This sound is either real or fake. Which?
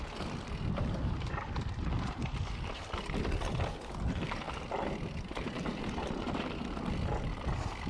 real